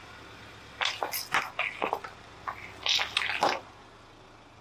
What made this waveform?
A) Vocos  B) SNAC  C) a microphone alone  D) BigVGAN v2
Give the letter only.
C